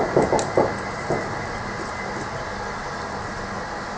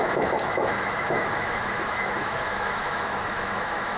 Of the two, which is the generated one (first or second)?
second